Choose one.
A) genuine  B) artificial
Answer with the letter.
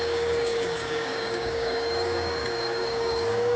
B